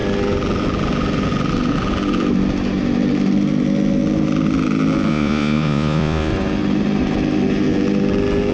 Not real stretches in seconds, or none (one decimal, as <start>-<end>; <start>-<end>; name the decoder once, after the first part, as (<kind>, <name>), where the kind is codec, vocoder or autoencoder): 5.1-6.3 (vocoder, Vocos)

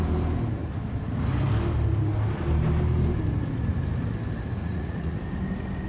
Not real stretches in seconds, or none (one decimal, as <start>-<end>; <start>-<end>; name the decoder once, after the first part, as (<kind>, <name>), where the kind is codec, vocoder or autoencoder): 4.6-5.2 (vocoder, Vocos)

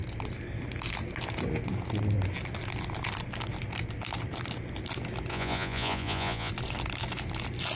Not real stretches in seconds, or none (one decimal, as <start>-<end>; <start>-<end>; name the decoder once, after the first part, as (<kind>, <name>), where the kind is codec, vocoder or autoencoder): 5.3-6.5 (vocoder, Vocos)

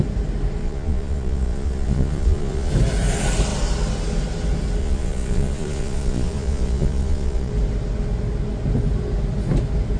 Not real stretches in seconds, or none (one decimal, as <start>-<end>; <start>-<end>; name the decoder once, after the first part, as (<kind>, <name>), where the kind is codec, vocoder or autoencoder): 0.6-2.7 (vocoder, Vocos); 4.8-7.5

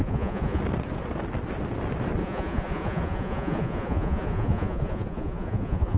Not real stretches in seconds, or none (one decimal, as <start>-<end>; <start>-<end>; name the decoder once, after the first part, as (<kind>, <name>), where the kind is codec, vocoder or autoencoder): 0.0-0.6 (vocoder, Vocos); 2.2-6.0

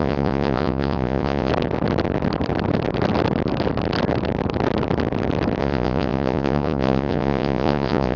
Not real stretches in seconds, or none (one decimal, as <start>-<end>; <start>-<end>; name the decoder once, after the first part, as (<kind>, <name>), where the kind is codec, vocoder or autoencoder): 0.0-1.5 (vocoder, Vocos); 5.6-8.2

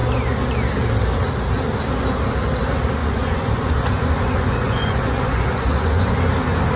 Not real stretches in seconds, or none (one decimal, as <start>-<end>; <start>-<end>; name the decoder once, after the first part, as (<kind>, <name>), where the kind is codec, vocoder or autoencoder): 3.0-6.1 (vocoder, Vocos)

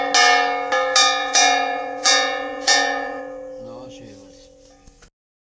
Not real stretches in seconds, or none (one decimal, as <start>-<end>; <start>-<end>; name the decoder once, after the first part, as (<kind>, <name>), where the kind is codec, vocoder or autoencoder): 1.2-3.2 (vocoder, Vocos)